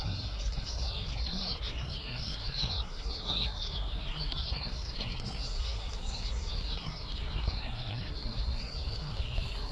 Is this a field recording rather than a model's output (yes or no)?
no